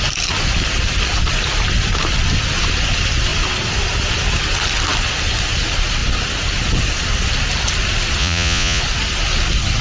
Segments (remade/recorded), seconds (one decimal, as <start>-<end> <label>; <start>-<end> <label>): 0.0-8.2 recorded; 8.2-8.8 remade; 8.8-9.8 recorded